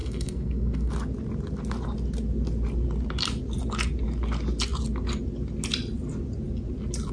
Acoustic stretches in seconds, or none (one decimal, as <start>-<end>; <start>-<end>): 0.9-7.1